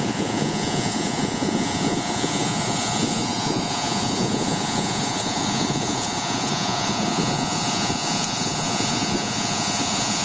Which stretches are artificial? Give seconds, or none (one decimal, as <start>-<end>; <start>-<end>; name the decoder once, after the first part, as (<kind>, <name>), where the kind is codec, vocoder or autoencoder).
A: 0.0-10.2 (vocoder, Vocos)